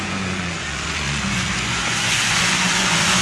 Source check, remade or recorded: remade